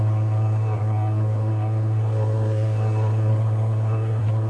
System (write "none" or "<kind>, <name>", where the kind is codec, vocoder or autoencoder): codec, SNAC